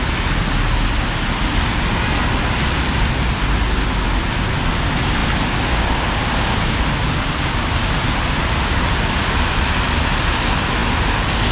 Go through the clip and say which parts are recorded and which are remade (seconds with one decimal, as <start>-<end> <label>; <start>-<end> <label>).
0.0-11.5 recorded